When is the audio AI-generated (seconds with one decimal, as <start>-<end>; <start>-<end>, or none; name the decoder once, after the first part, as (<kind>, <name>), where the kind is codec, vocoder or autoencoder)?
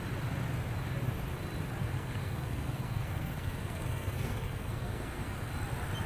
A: 1.8-5.5 (codec, SNAC)